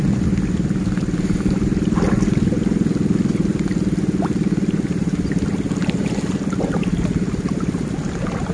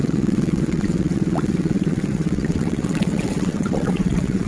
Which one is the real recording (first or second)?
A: first